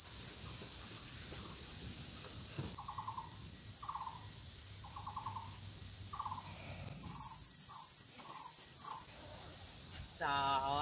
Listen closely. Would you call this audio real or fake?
real